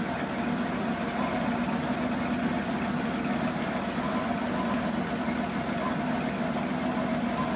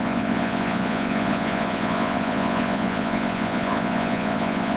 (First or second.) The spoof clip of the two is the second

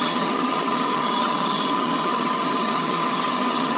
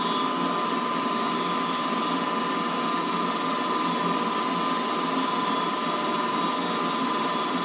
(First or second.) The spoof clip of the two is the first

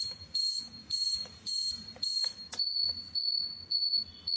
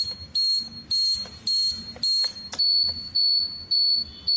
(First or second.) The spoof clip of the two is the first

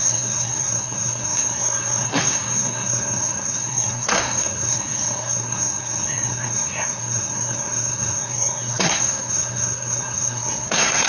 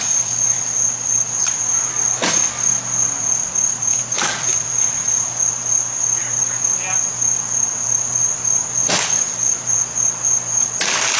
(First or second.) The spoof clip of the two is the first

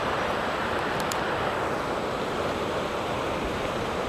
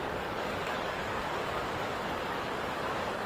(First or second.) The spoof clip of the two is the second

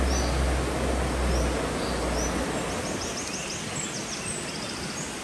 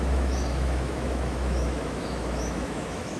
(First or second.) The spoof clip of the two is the second